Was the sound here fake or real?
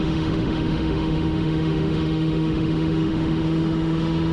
fake